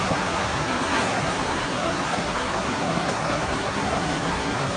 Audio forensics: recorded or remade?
remade